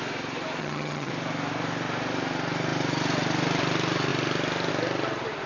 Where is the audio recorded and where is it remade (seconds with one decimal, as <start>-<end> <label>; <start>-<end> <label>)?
0.0-0.6 recorded; 0.6-1.1 remade; 1.1-5.5 recorded